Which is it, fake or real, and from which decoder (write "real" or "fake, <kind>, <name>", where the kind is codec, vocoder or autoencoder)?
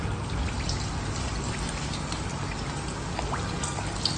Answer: real